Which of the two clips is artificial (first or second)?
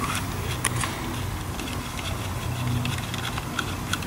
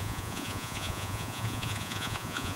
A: second